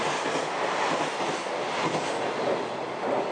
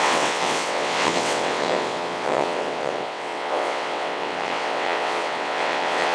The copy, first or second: second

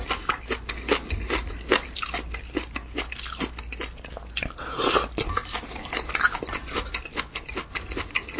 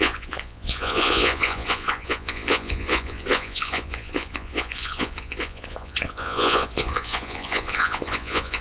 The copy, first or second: second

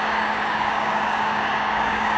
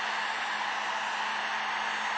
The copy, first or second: first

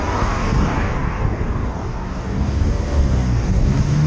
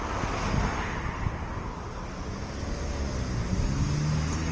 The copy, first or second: first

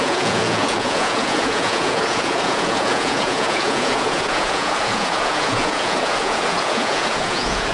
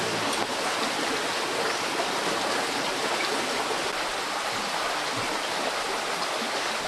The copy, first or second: first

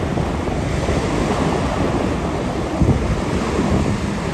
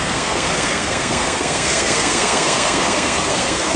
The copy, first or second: second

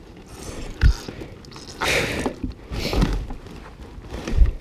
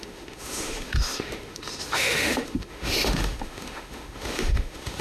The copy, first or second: second